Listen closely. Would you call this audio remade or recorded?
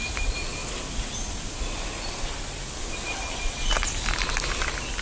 recorded